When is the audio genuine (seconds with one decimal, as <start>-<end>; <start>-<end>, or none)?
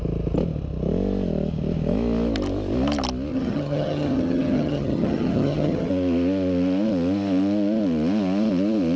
0.0-3.3; 5.9-9.0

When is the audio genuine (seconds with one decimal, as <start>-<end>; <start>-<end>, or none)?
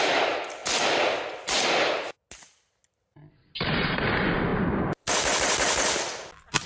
0.0-6.7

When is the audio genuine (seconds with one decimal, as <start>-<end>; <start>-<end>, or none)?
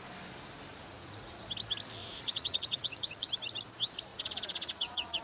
0.0-0.7; 1.5-2.0; 3.3-4.1